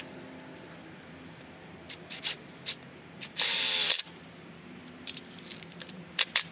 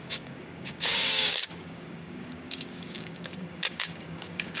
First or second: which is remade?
second